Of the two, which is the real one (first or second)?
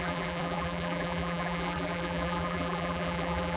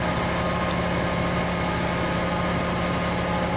second